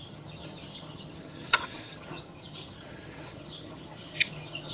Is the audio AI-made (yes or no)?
yes